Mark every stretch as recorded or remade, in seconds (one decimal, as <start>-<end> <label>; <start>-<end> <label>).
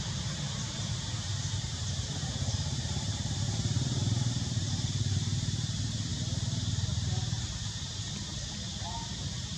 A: 0.0-9.6 remade